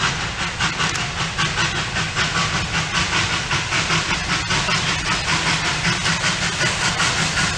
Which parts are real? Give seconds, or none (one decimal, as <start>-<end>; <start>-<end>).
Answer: 0.0-7.6

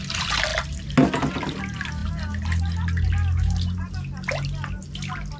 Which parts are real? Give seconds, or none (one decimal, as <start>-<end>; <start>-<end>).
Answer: 0.0-5.4